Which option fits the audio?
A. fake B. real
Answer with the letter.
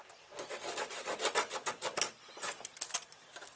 B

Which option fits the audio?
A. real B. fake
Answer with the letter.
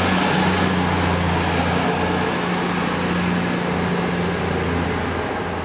A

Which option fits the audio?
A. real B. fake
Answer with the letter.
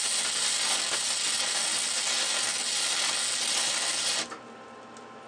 A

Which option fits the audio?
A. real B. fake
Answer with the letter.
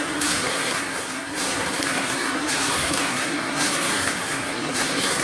B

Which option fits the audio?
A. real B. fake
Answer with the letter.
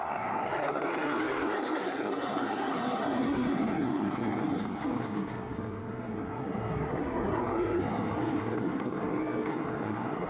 B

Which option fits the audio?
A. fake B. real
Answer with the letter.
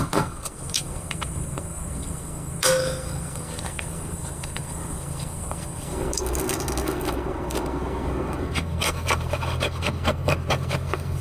A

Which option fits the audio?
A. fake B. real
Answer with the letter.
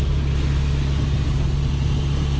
B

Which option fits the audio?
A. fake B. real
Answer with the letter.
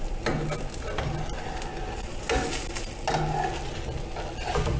B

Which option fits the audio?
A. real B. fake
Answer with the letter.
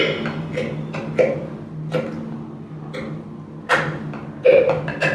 A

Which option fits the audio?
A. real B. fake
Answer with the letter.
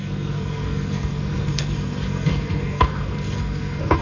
B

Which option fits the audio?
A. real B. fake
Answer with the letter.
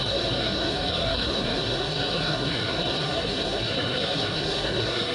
B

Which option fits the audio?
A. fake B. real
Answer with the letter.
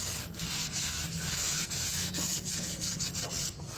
A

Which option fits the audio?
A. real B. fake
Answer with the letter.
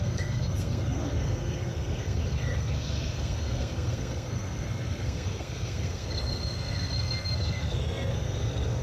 B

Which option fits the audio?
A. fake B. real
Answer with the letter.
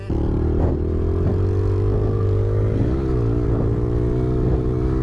B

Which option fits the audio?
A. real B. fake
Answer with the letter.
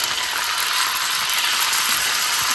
A